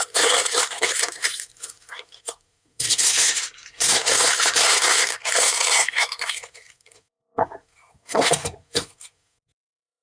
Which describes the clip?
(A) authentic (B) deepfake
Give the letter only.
B